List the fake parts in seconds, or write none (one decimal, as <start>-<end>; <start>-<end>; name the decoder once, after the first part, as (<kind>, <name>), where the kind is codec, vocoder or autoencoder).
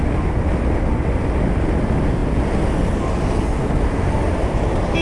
none